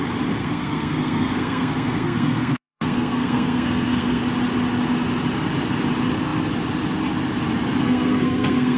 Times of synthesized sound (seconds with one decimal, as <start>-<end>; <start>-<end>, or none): 0.4-4.2; 7.8-8.8